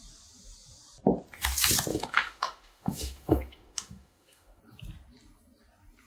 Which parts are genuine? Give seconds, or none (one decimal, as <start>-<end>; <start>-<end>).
0.0-1.9; 4.6-6.1